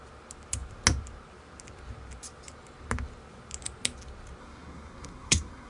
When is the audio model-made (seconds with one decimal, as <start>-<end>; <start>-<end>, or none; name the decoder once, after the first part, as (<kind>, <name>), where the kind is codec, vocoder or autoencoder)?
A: 4.4-5.7 (codec, SNAC)